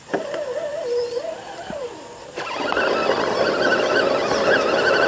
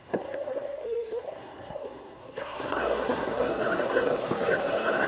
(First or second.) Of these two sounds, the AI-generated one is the second